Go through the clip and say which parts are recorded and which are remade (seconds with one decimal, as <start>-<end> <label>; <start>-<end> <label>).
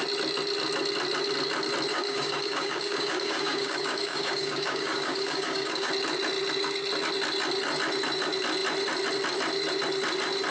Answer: 0.0-1.9 recorded; 1.9-5.9 remade; 5.9-10.5 recorded